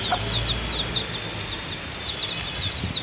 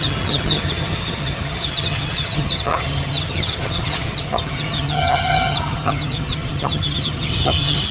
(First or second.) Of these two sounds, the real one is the first